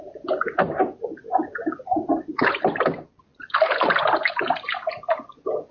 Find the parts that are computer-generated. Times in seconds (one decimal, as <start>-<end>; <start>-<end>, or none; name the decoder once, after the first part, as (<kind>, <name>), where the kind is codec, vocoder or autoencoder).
none